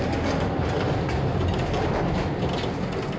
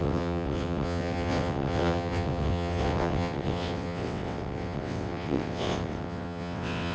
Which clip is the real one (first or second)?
first